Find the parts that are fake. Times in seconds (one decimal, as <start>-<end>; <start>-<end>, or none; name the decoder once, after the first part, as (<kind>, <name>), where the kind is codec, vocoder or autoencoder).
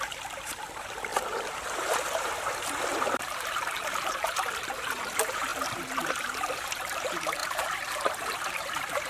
0.0-9.1 (vocoder, BigVGAN v2)